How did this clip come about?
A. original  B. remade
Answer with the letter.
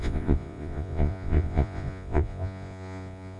B